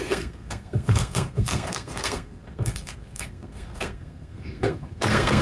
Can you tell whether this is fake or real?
fake